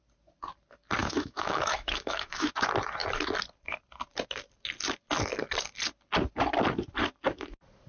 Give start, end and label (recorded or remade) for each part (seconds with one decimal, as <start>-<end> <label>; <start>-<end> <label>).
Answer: 0.0-1.0 recorded; 1.0-2.5 remade; 2.5-7.9 recorded